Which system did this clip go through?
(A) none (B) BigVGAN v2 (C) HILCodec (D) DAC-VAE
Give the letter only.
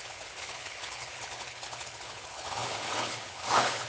C